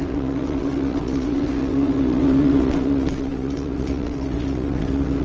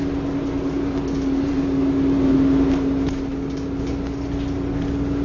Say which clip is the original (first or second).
second